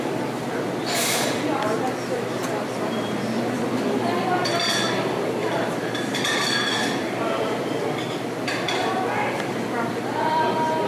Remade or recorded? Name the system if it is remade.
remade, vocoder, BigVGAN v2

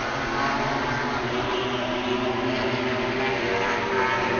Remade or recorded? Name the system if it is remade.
recorded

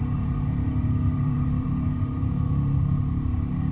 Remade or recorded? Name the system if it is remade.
remade, vocoder, BigVGAN v2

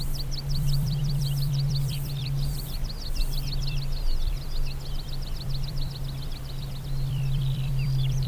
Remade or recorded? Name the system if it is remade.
remade, vocoder, BigVGAN v2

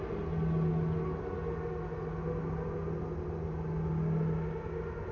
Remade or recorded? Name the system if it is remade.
recorded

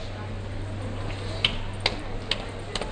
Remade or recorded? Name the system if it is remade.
recorded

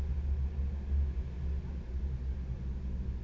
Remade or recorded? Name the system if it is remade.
recorded